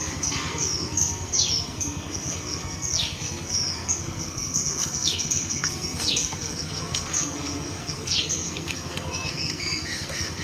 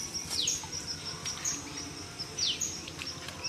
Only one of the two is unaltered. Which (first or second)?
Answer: second